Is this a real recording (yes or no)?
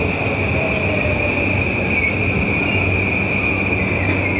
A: yes